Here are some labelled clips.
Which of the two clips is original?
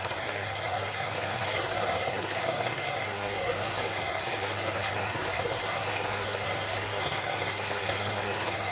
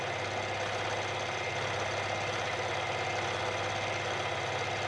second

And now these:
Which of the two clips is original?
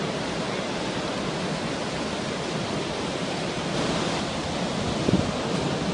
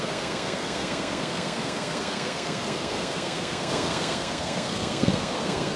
first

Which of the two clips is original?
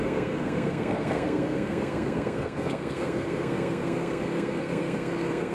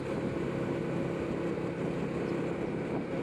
second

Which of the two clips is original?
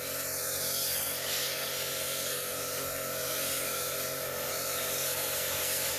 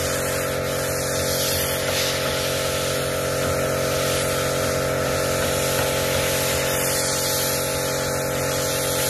second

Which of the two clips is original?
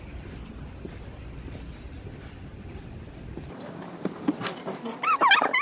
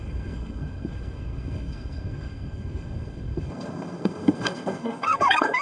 first